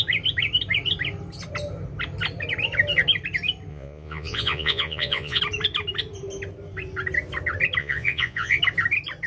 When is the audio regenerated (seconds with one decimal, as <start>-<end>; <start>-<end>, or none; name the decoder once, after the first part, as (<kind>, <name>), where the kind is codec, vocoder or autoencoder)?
3.7-5.4 (vocoder, Vocos); 7.8-8.6